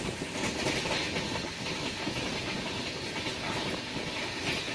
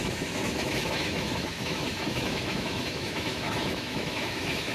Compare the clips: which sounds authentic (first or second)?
first